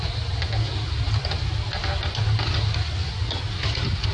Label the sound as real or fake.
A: fake